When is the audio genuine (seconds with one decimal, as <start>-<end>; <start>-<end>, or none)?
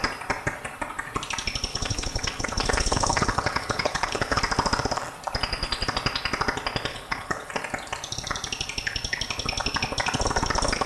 0.0-1.7; 4.4-6.9; 7.5-10.9